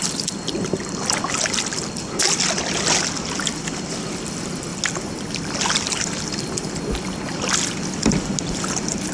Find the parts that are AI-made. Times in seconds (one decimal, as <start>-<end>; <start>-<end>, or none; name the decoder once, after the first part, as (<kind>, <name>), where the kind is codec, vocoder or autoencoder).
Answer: none